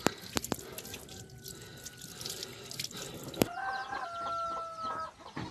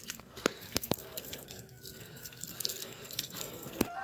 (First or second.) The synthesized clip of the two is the second